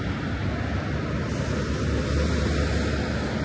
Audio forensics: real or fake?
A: real